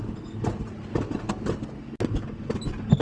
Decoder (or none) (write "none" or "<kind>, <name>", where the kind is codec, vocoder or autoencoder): none